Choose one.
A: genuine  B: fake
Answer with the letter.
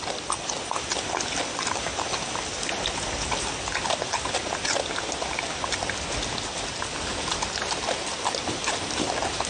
A